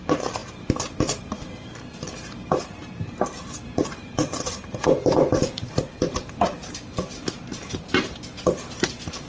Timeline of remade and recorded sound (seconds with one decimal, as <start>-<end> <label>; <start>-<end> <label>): 0.0-9.3 remade